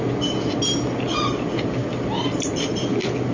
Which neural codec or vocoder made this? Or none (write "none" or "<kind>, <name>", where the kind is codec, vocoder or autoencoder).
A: none